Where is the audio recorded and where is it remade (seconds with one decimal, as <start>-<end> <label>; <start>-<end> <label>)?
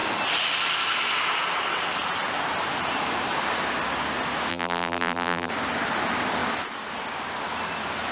0.0-4.5 recorded; 4.5-5.5 remade; 5.5-8.1 recorded